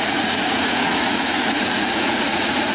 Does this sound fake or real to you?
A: fake